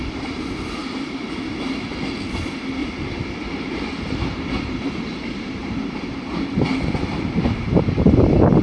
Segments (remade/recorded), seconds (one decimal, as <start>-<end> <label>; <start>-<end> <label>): 0.0-0.8 recorded; 0.8-1.4 remade; 1.4-2.8 recorded; 2.8-7.9 remade; 7.9-8.6 recorded